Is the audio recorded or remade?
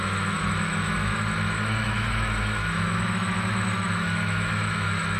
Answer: remade